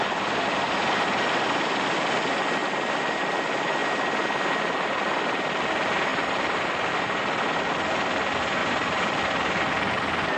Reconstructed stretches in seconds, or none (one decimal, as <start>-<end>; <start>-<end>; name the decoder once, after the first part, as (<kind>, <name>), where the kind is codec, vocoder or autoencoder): 6.1-6.7 (vocoder, BigVGAN v2); 8.6-9.2